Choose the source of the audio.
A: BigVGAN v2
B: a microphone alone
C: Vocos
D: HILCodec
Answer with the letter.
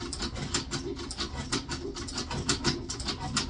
B